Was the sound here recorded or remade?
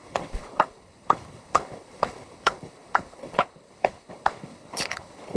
remade